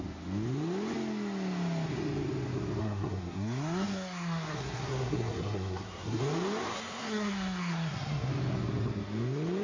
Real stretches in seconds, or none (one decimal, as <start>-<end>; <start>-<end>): 0.0-2.8; 6.2-6.7; 8.3-9.6